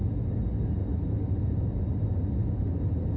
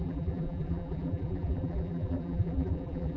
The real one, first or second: first